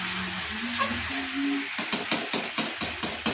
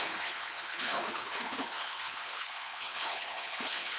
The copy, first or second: second